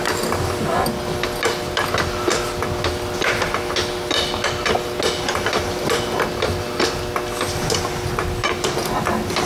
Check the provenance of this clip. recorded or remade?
recorded